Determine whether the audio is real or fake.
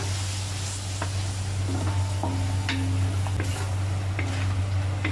real